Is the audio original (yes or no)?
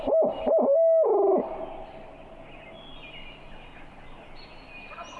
yes